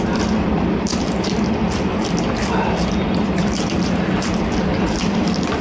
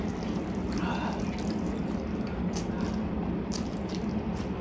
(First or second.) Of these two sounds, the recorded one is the second